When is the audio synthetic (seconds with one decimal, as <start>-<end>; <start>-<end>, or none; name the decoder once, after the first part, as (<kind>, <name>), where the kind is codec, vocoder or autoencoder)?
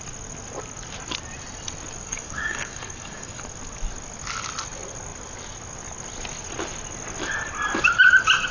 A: 2.0-3.4 (codec, DAC)